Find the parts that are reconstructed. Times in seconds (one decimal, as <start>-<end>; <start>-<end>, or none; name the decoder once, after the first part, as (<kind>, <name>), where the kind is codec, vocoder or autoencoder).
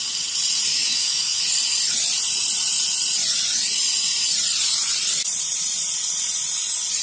0.7-1.4 (autoencoder, DAC-VAE)